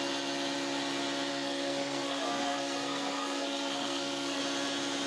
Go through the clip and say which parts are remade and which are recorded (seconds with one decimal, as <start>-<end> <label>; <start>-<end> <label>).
0.0-1.3 recorded; 1.3-4.4 remade; 4.4-5.1 recorded